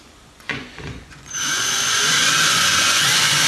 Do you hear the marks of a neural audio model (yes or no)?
yes